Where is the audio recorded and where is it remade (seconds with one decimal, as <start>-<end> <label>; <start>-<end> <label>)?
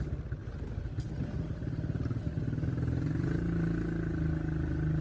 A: 0.0-5.0 recorded